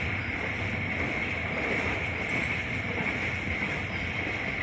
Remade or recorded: recorded